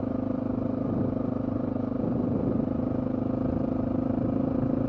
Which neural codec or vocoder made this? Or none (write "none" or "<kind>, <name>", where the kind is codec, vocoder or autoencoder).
none